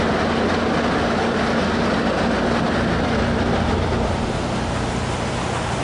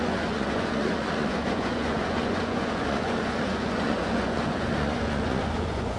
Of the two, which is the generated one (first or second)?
second